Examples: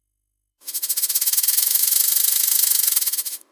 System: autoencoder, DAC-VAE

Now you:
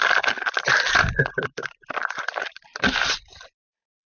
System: vocoder, BigVGAN v2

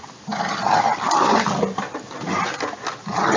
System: none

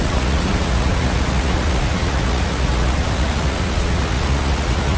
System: vocoder, Vocos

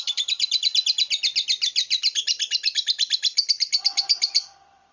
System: none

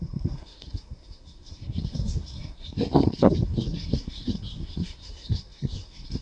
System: codec, SNAC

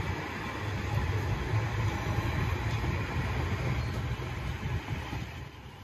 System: none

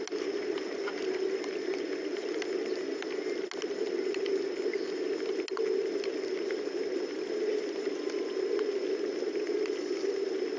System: none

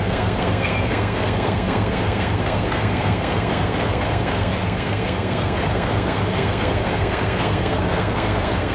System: codec, SNAC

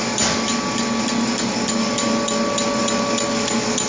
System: none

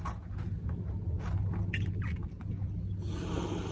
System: none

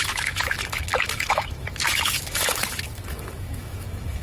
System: autoencoder, DAC-VAE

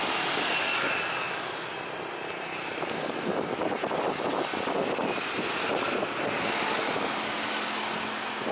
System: none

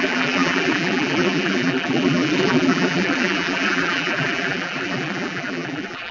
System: vocoder, BigVGAN v2